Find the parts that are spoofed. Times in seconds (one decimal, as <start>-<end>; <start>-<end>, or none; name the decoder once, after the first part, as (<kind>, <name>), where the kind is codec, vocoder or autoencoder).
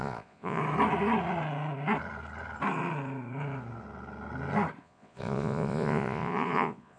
0.0-0.6 (vocoder, Vocos); 4.8-7.0